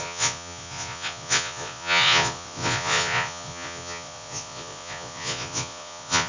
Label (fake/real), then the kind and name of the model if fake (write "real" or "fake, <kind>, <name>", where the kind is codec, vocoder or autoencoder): fake, vocoder, Vocos